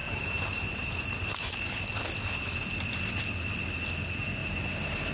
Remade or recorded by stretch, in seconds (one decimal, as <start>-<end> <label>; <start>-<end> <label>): 0.0-1.8 remade; 1.8-4.4 recorded; 4.4-5.1 remade